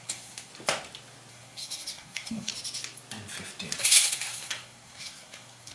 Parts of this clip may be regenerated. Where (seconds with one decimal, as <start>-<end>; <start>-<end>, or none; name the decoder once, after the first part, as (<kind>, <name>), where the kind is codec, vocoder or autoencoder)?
0.0-0.5 (codec, SNAC); 1.3-2.5; 3.8-5.7